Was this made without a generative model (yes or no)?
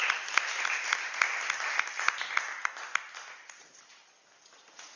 yes